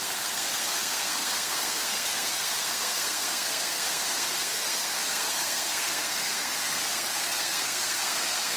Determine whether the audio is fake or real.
fake